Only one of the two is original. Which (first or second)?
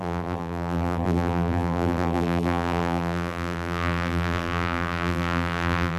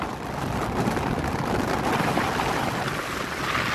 second